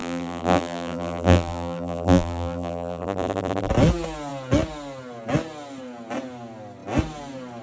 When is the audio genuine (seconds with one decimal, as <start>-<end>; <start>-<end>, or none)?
3.7-7.6